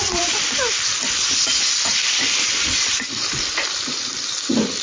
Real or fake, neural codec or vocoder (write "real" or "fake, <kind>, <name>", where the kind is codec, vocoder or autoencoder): fake, vocoder, BigVGAN v2